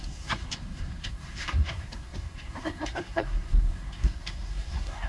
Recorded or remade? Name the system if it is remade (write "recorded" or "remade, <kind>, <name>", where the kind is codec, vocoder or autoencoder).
remade, codec, SNAC